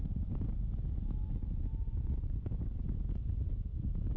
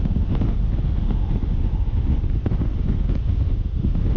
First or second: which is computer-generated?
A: second